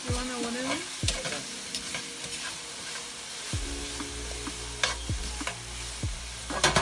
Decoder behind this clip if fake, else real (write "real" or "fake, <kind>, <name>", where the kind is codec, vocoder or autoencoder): real